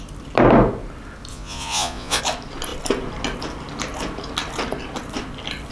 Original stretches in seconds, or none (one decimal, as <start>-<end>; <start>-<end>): 0.0-1.3; 2.2-5.7